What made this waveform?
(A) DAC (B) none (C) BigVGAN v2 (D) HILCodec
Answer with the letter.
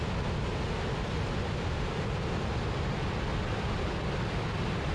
B